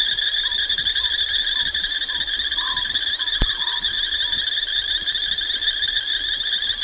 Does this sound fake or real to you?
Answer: real